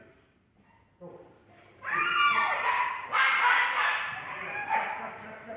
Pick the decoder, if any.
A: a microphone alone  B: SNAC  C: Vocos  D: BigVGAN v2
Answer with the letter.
A